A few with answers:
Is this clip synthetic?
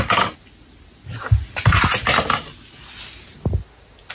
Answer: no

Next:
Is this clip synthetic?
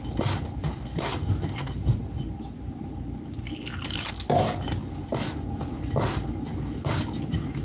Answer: no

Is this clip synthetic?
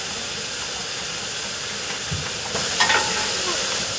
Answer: no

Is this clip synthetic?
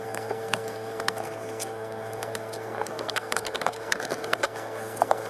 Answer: yes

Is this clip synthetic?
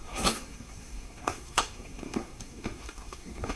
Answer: yes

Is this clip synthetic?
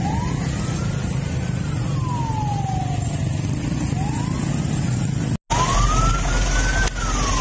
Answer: no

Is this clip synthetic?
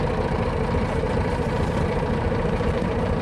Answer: yes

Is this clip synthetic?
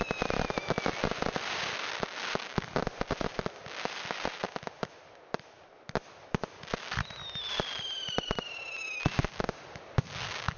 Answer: no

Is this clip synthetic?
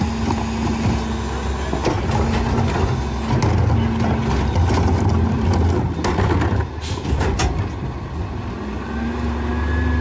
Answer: no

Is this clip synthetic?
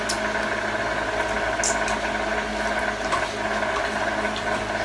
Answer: no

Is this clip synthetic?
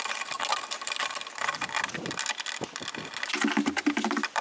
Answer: no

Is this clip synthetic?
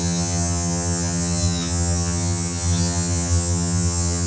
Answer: yes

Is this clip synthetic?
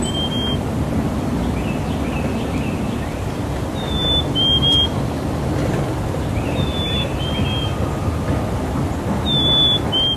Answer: no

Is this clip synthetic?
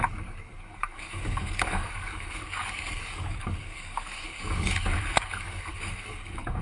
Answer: yes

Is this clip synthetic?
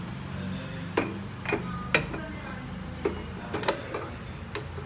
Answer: no